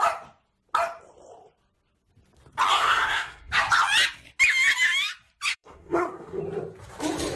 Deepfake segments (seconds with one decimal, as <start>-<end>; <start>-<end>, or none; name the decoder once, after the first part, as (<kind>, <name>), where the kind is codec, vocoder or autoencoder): 2.7-3.5 (codec, SNAC); 5.5-6.4